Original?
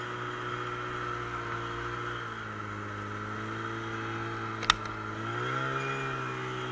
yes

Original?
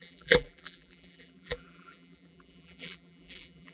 no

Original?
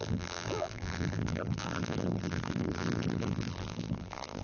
no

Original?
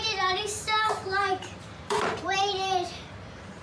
no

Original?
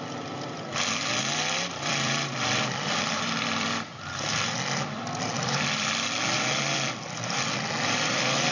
no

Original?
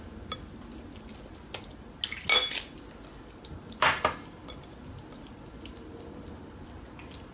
yes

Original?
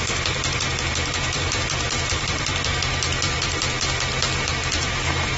no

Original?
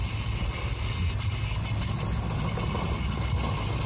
yes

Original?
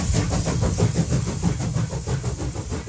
yes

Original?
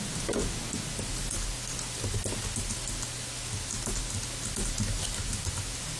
yes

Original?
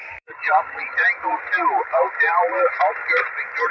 no